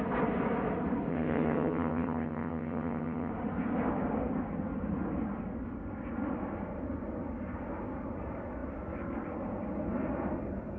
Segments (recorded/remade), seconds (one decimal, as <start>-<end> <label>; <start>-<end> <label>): 0.0-1.1 recorded; 1.1-3.3 remade; 3.3-10.8 recorded